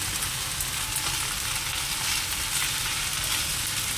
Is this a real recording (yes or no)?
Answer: yes